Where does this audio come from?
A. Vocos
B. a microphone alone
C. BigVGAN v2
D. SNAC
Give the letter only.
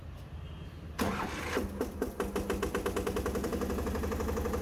B